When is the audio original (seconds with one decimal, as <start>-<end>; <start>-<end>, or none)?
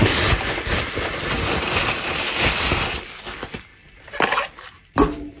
0.0-5.4